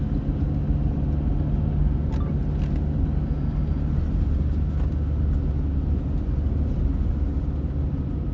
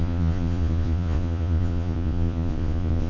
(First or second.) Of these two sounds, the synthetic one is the second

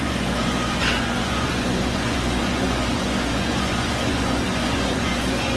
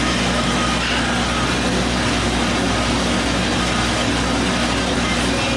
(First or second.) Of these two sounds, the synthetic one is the first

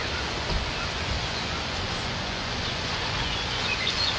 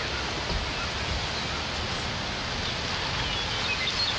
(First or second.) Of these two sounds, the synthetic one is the first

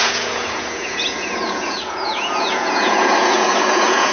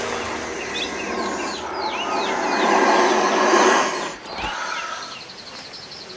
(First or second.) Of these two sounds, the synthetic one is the first